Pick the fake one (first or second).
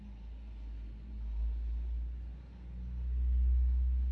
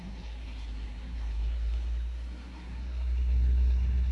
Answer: second